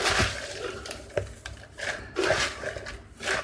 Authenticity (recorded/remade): recorded